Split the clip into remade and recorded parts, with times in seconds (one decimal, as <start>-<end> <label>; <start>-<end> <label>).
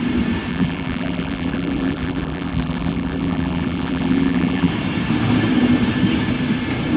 0.0-0.5 recorded; 0.5-4.7 remade; 4.7-7.0 recorded